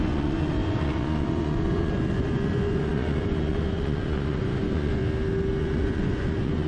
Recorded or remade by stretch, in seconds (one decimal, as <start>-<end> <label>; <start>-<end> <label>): 0.0-5.0 remade; 5.0-5.6 recorded; 5.6-6.7 remade